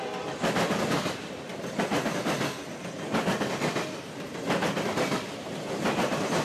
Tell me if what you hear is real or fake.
fake